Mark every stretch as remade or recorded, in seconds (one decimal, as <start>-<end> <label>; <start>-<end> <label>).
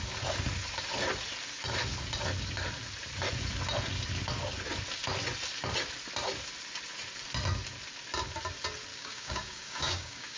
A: 0.0-8.9 recorded; 8.9-10.4 remade